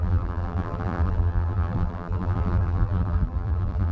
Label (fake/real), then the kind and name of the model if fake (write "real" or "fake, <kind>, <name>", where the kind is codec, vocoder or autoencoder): fake, vocoder, BigVGAN v2